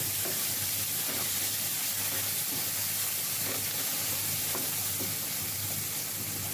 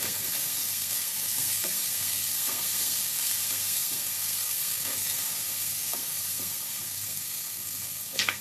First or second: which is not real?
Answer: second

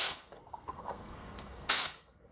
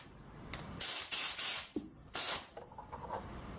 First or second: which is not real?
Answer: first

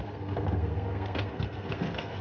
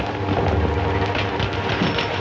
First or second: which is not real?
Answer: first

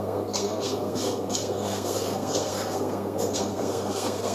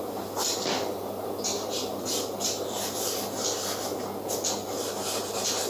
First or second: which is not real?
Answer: first